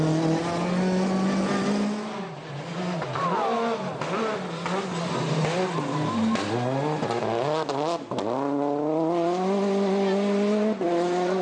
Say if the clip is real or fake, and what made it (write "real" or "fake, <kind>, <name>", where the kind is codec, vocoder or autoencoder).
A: real